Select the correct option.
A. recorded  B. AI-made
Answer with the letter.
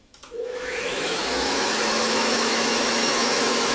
B